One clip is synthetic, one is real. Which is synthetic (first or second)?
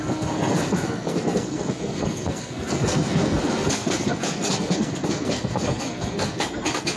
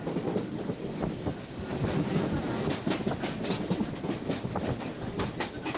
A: first